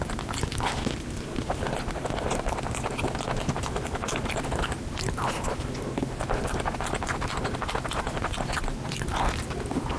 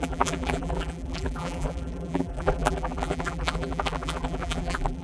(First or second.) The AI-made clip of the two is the second